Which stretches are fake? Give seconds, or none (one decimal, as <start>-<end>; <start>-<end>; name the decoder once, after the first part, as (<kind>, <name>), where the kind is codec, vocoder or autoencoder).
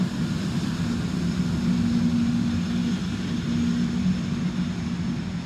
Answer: none